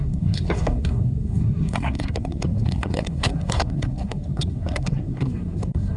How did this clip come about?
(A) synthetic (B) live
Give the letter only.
A